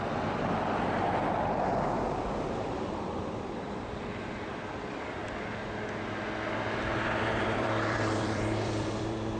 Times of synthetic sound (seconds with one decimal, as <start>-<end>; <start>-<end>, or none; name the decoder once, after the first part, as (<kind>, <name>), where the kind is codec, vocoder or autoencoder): 0.0-5.2 (vocoder, BigVGAN v2); 6.9-9.4